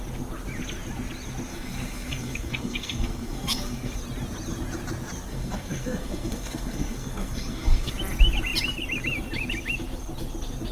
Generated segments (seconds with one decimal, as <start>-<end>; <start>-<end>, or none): 1.5-4.0; 5.3-7.9

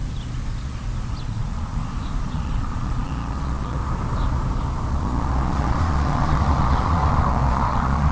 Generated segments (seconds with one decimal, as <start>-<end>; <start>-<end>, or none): 1.2-1.8; 2.3-3.8; 4.9-8.1